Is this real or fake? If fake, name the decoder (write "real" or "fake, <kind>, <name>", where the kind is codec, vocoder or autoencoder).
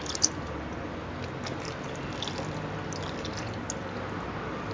real